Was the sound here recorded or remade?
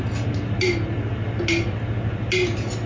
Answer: recorded